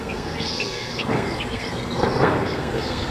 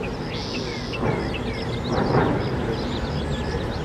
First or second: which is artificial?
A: first